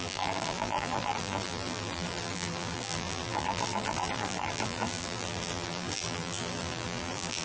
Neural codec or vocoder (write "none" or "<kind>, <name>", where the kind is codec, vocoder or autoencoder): vocoder, BigVGAN v2